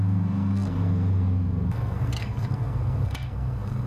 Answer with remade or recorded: remade